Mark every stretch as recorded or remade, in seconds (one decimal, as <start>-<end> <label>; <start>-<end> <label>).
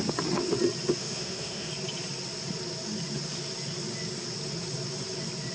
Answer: 0.0-1.0 recorded; 1.0-1.7 remade; 1.7-5.5 recorded